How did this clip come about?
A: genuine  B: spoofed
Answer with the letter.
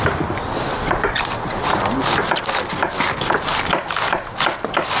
A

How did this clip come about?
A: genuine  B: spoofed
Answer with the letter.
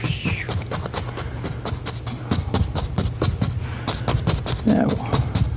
A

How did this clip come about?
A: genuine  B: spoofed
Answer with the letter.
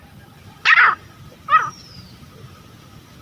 A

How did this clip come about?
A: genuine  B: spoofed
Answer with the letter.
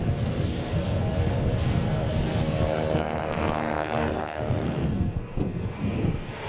B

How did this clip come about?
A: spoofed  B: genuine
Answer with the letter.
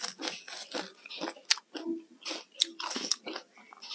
B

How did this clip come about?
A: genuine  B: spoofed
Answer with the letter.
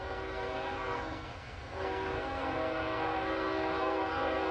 B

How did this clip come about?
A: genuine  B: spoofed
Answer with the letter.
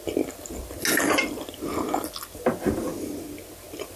A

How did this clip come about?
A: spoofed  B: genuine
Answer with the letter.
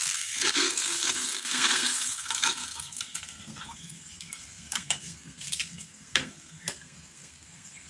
A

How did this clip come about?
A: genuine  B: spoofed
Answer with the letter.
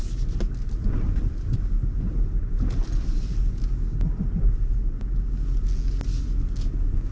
A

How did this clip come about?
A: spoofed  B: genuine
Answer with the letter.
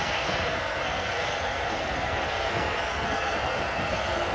A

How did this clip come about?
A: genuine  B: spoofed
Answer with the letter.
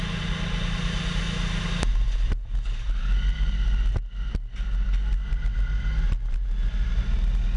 A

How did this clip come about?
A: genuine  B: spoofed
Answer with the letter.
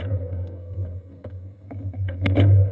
B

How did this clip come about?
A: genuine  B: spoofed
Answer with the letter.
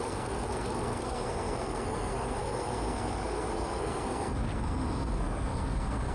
B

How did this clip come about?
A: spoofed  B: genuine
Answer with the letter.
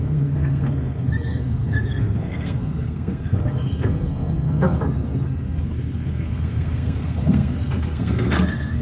A